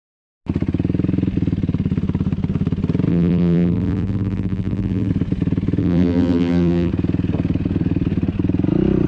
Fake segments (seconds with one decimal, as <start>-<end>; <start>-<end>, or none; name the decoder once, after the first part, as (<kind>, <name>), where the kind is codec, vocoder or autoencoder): 3.1-5.1 (vocoder, BigVGAN v2); 5.8-6.9